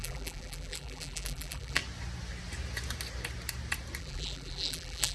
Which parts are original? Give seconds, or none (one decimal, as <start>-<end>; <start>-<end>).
1.8-4.0